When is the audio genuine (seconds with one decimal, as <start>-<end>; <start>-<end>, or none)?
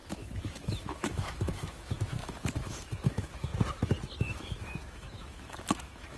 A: 3.5-4.2